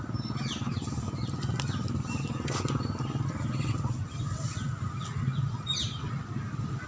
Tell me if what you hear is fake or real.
real